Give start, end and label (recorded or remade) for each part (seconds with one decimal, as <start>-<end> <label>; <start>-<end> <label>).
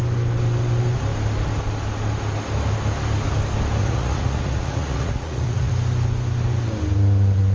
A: 0.0-3.8 recorded; 3.8-5.7 remade; 5.7-7.5 recorded